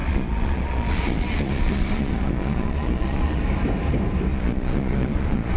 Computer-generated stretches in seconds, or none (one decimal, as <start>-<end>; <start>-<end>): 0.0-3.4; 4.3-5.6